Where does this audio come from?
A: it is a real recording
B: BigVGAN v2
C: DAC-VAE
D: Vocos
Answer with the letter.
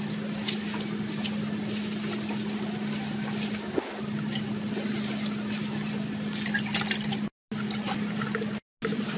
A